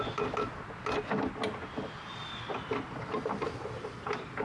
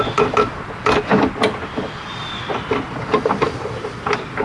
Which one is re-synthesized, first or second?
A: second